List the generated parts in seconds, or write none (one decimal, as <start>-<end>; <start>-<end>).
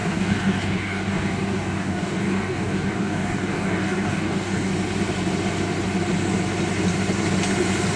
0.0-4.7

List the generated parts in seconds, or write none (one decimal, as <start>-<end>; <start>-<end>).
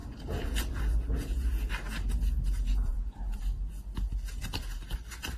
0.0-1.7; 2.7-3.4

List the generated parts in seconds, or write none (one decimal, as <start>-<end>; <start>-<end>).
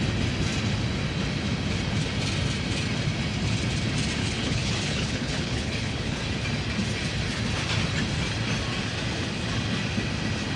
4.2-6.2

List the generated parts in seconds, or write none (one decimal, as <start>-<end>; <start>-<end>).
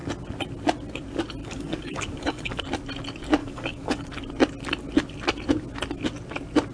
1.4-2.6; 3.4-4.1